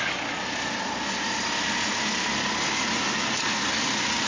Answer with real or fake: real